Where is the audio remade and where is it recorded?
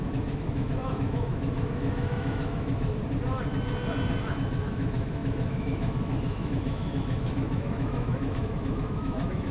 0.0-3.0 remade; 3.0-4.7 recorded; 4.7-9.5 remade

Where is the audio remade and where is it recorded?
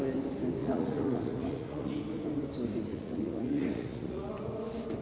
0.0-0.6 recorded; 0.6-2.0 remade; 2.0-2.9 recorded; 2.9-4.3 remade; 4.3-5.0 recorded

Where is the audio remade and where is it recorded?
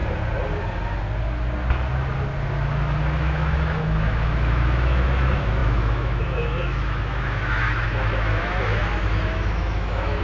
0.0-3.0 recorded; 3.0-10.2 remade